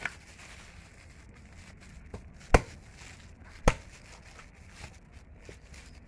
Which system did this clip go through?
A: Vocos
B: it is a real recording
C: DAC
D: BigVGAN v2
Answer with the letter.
B